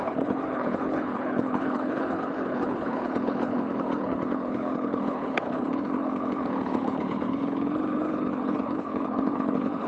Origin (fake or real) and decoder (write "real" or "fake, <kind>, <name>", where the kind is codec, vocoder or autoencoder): fake, codec, HILCodec